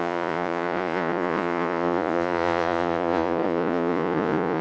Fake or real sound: fake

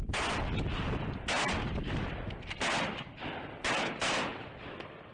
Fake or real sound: real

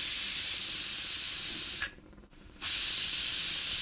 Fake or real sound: fake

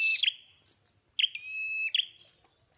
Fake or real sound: real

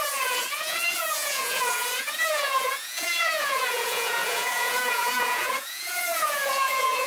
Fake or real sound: fake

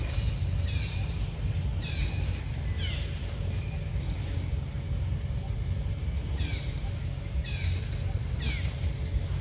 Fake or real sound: real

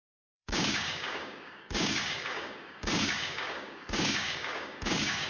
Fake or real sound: fake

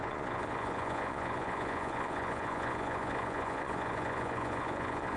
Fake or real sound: fake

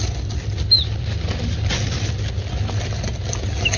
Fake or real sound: real